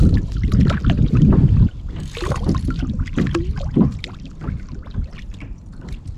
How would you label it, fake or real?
real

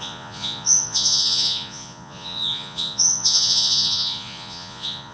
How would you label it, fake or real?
fake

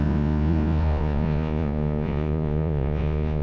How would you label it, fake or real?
fake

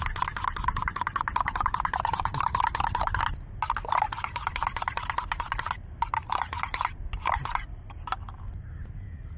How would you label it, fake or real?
real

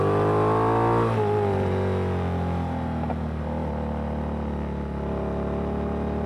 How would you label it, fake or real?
real